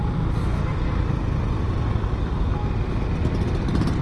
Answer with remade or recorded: recorded